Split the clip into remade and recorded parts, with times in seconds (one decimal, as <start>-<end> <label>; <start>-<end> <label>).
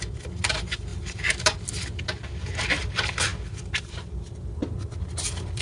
0.0-5.6 recorded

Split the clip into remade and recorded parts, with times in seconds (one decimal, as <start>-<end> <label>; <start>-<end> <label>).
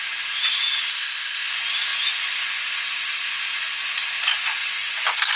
0.0-0.9 recorded; 0.9-1.5 remade; 1.5-5.4 recorded